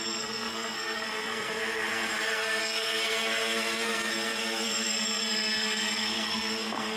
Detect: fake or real fake